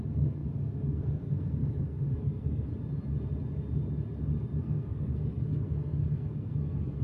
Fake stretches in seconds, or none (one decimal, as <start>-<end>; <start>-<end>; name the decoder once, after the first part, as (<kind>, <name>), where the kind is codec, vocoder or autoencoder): 0.0-2.7 (codec, SNAC); 4.6-7.0